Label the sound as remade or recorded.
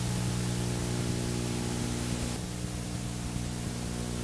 recorded